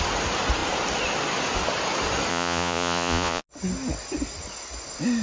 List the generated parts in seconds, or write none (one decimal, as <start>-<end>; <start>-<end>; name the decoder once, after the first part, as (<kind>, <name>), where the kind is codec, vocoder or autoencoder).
2.3-3.4 (vocoder, Vocos)